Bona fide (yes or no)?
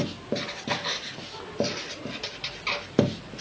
no